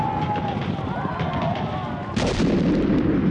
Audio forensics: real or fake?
real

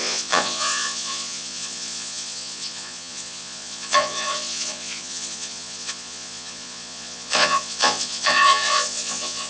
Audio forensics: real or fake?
fake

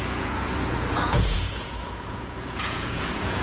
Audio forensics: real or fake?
fake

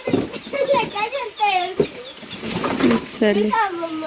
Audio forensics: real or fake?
fake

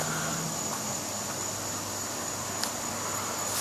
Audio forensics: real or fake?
real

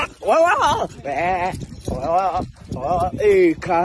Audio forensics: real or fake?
real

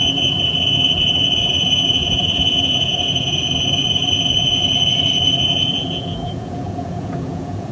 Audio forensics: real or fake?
fake